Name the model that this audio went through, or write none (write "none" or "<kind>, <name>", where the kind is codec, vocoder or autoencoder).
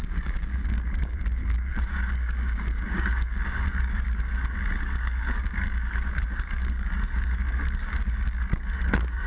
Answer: codec, DAC